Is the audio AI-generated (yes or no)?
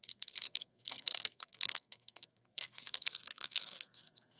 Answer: yes